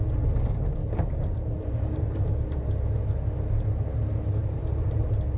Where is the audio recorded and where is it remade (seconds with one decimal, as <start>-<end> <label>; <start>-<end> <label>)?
0.0-0.7 recorded; 0.7-2.6 remade; 2.6-4.4 recorded; 4.4-5.0 remade; 5.0-5.4 recorded